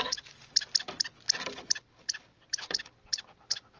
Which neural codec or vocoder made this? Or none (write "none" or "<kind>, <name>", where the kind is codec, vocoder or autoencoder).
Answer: none